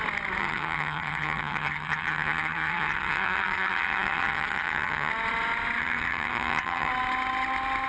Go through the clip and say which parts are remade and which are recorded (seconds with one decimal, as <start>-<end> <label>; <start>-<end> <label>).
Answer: 0.0-0.4 recorded; 0.4-5.1 remade; 5.1-5.8 recorded; 5.8-6.9 remade; 6.9-7.9 recorded